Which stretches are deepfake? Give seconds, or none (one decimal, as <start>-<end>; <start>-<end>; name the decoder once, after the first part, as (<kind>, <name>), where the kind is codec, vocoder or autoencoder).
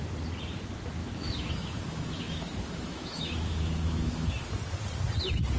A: 1.0-4.4 (autoencoder, DAC-VAE)